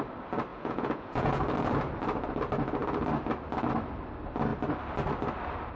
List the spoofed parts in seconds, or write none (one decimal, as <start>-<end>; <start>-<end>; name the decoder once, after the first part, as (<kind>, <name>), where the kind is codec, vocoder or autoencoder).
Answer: 0.5-1.4 (vocoder, Vocos)